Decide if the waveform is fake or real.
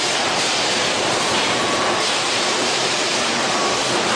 fake